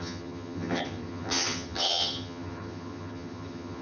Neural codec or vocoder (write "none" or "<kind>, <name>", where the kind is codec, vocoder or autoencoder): vocoder, HiFi-GAN